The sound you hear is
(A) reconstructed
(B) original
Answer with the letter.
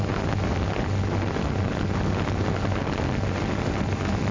B